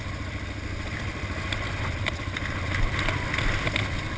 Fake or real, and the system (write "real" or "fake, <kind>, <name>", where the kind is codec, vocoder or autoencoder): real